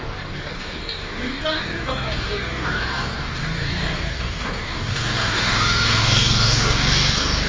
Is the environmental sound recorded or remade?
remade